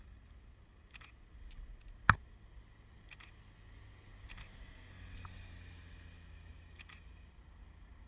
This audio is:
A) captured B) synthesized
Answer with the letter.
A